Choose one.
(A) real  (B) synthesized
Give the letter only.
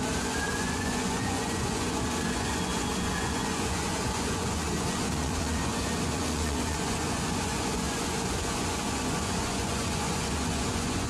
B